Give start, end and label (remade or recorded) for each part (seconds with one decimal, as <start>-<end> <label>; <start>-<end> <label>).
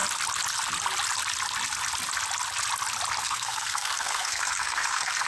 0.0-3.2 recorded; 3.2-5.3 remade